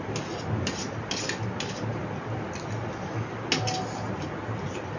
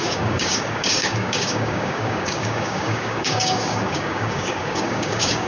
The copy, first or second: second